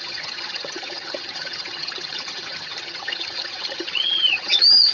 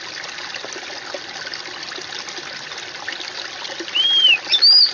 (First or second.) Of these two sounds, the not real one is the first